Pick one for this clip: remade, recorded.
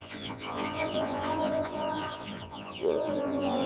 remade